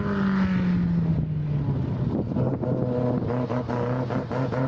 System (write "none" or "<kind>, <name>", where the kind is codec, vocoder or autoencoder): none